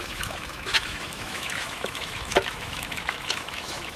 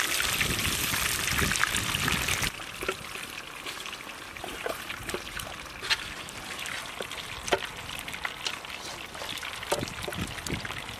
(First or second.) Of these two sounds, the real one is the second